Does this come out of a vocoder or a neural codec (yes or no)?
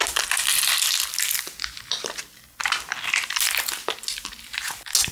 no